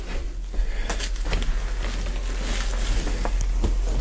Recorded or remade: recorded